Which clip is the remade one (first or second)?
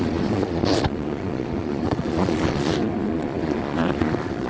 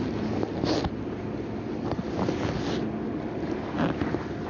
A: first